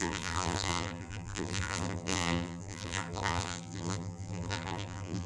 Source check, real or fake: fake